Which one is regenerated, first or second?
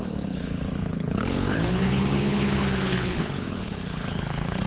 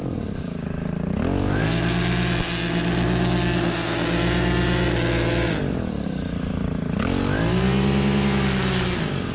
first